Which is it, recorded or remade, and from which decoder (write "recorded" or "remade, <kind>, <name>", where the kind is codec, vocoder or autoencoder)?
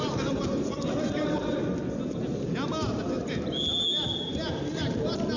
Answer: recorded